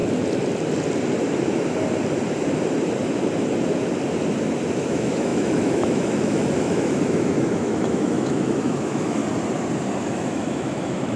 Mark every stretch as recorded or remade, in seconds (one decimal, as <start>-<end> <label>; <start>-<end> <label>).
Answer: 0.0-4.8 recorded; 4.8-9.2 remade; 9.2-10.0 recorded; 10.0-11.2 remade